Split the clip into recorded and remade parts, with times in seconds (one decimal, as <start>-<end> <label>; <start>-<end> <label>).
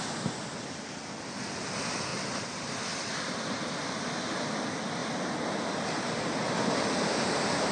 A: 0.0-2.1 recorded; 2.1-2.6 remade; 2.6-7.7 recorded